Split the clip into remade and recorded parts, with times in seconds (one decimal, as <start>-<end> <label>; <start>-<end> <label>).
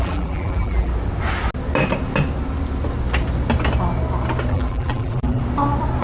0.0-0.9 remade; 0.9-4.5 recorded; 4.5-5.4 remade; 5.4-6.0 recorded